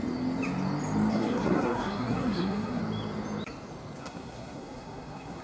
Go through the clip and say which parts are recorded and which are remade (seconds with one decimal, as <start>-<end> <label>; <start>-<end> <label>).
0.0-1.1 recorded; 1.1-2.8 remade; 2.8-4.0 recorded; 4.0-5.4 remade

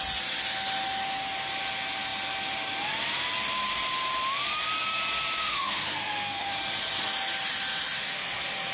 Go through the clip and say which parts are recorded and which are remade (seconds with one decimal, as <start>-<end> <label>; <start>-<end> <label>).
0.0-5.4 recorded; 5.4-6.5 remade; 6.5-8.7 recorded